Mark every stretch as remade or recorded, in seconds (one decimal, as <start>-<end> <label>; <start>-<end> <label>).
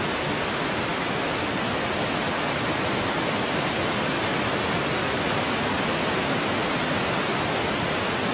0.0-0.9 recorded; 0.9-1.6 remade; 1.6-2.2 recorded; 2.2-7.2 remade; 7.2-8.3 recorded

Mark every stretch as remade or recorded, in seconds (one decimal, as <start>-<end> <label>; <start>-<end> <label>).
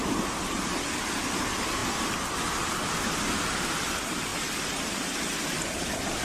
0.0-1.8 recorded; 1.8-2.4 remade; 2.4-4.3 recorded; 4.3-6.2 remade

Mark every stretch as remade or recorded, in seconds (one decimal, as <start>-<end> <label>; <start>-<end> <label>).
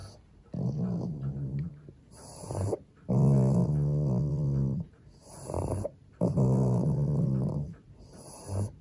0.0-3.6 remade; 3.6-4.3 recorded; 4.3-8.8 remade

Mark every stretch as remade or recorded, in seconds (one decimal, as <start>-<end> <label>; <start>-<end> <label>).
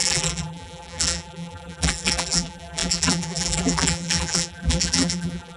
0.0-5.6 remade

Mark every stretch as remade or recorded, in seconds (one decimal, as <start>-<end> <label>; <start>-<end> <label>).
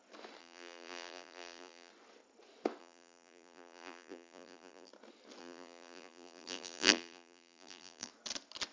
0.0-0.4 recorded; 0.4-1.9 remade; 1.9-2.8 recorded; 2.8-4.9 remade; 4.9-5.4 recorded; 5.4-8.1 remade; 8.1-8.7 recorded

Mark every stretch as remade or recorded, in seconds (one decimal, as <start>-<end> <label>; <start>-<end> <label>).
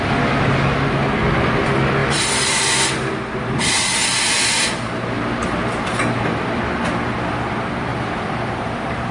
0.0-2.0 recorded; 2.0-2.6 remade; 2.6-7.9 recorded; 7.9-9.1 remade